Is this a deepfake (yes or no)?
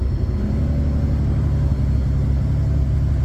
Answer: no